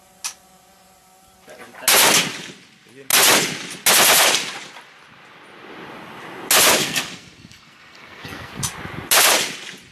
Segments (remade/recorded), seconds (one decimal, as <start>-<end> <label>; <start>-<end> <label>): 0.0-6.8 recorded; 6.8-8.6 remade; 8.6-9.9 recorded